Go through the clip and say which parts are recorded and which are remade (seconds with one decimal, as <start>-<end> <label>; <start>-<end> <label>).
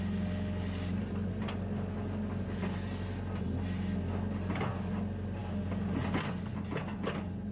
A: 0.0-7.5 recorded